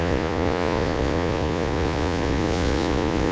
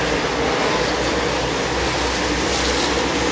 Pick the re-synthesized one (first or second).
first